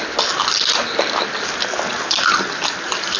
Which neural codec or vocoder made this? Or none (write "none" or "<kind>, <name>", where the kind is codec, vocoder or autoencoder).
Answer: none